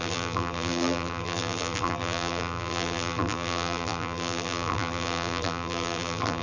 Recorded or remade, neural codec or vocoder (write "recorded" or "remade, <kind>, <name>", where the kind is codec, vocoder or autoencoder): remade, vocoder, BigVGAN v2